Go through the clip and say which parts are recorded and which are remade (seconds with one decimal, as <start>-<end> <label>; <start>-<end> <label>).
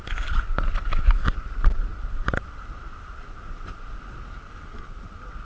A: 0.0-5.4 recorded